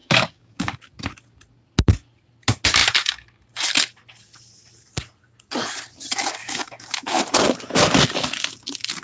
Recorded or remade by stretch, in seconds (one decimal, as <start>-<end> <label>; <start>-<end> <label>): 0.0-0.8 remade; 0.8-6.4 recorded; 6.4-7.2 remade; 7.2-9.0 recorded